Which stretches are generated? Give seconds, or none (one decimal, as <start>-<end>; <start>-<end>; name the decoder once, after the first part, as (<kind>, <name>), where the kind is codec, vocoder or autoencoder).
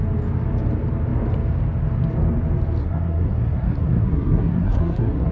2.8-5.3 (codec, SNAC)